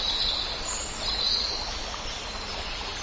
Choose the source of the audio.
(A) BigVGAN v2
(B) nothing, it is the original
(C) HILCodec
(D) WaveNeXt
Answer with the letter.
B